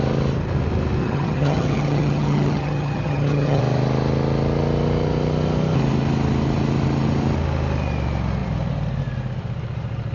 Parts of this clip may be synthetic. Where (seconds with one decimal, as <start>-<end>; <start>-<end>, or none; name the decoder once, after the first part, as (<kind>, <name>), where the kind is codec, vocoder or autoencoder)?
1.0-3.6 (vocoder, HiFi-GAN)